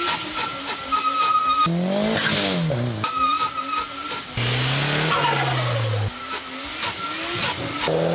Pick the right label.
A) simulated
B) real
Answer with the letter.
B